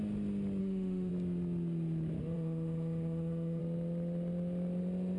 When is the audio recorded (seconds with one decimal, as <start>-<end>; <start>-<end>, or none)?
0.0-0.6; 1.1-2.2; 3.6-5.2